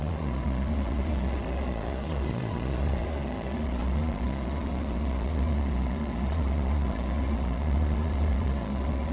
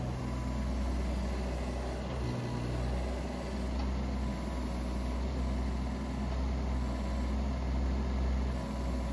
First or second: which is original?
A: second